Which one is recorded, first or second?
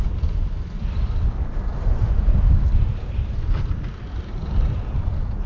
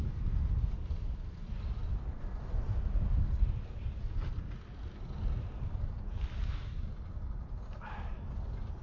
second